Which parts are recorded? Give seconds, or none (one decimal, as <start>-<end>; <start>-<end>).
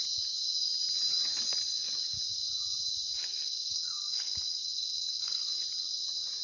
0.0-3.3; 5.5-6.4